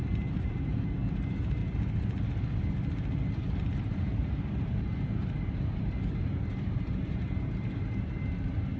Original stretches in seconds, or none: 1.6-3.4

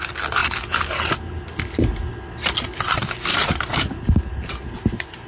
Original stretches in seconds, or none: 0.0-3.3